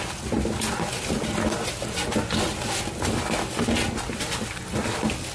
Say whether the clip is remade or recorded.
recorded